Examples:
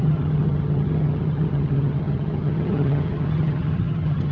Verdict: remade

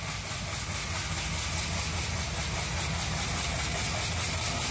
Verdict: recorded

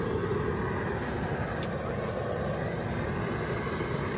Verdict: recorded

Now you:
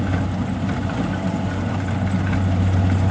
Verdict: recorded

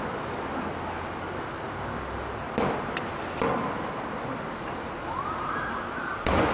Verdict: recorded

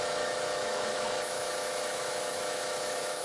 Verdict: remade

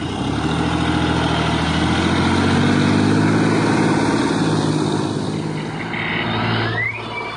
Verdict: recorded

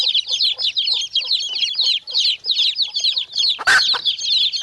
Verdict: recorded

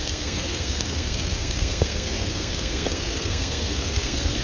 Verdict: remade